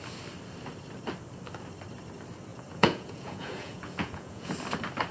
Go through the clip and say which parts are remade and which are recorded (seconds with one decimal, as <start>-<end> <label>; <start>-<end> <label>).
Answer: 0.0-2.5 recorded; 2.5-4.5 remade; 4.5-5.1 recorded

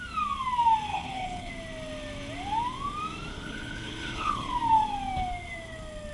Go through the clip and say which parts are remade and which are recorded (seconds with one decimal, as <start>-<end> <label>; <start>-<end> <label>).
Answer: 0.0-0.9 recorded; 0.9-1.5 remade; 1.5-3.3 recorded; 3.3-4.5 remade; 4.5-6.1 recorded